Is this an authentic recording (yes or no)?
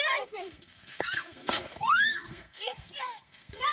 no